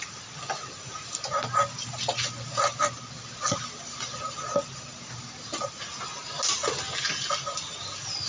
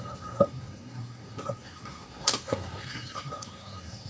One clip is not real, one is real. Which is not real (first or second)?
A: second